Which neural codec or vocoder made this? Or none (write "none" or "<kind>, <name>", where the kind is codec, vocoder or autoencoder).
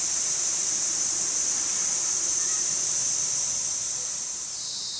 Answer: vocoder, BigVGAN v2